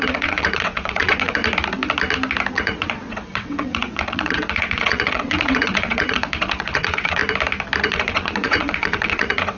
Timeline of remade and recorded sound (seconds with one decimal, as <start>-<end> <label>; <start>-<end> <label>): 0.0-1.4 remade; 1.4-2.5 recorded; 2.5-7.2 remade; 7.2-7.8 recorded; 7.8-9.6 remade